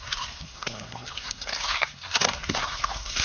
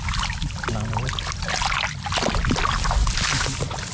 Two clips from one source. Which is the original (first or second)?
second